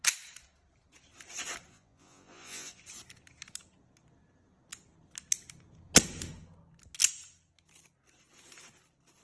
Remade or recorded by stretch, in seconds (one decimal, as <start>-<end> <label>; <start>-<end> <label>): 0.0-1.7 recorded; 1.7-2.8 remade; 2.8-9.2 recorded